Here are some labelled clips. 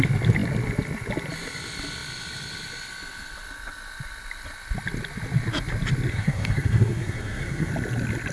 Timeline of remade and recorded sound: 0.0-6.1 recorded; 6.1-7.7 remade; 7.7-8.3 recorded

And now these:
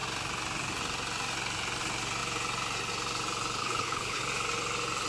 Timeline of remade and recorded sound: 0.0-3.6 recorded; 3.6-4.2 remade; 4.2-5.1 recorded

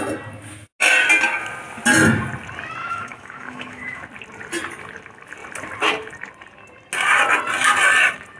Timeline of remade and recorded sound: 0.0-2.8 recorded; 2.8-4.0 remade; 4.0-8.4 recorded

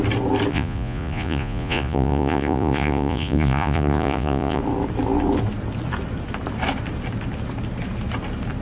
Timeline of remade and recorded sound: 0.0-0.5 recorded; 0.5-4.6 remade; 4.6-8.6 recorded

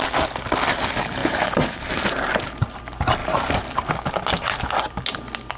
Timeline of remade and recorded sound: 0.0-1.2 recorded; 1.2-2.8 remade; 2.8-3.2 recorded; 3.2-3.9 remade; 3.9-5.6 recorded

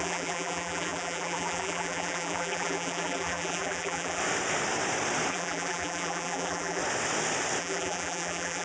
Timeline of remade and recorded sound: 0.0-4.2 remade; 4.2-5.3 recorded; 5.3-6.8 remade; 6.8-7.6 recorded; 7.6-8.6 remade